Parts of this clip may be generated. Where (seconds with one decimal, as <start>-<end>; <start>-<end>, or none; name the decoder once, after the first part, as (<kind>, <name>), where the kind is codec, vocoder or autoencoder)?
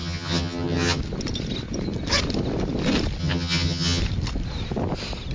0.0-1.0 (vocoder, HiFi-GAN); 3.2-4.0